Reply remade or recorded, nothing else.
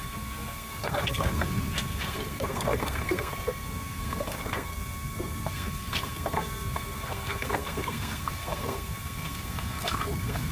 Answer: remade